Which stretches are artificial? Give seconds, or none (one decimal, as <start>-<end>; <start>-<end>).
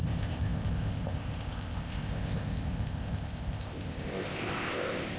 0.0-5.2